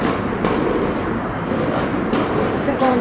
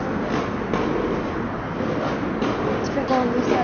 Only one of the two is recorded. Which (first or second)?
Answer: second